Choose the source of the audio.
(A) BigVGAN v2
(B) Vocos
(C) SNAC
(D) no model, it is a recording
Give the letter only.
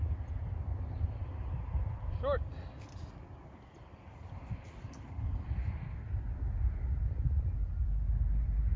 D